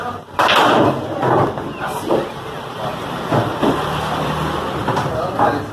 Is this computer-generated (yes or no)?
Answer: yes